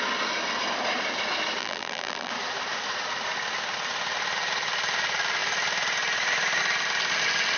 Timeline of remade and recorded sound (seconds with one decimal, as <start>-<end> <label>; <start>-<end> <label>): 0.0-1.6 recorded; 1.6-2.3 remade; 2.3-7.6 recorded